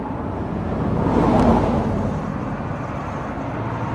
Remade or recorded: recorded